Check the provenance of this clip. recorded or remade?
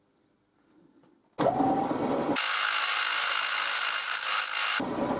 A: recorded